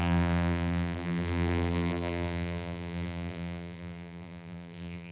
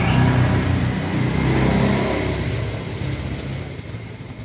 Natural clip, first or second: second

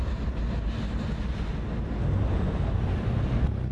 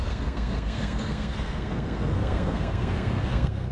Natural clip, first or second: first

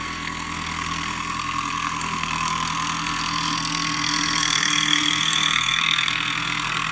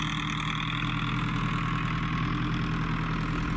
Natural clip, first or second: second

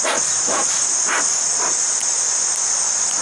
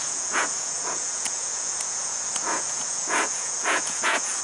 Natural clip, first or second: first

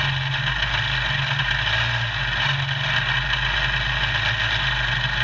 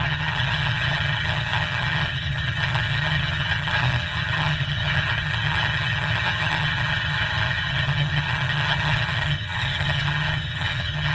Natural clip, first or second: first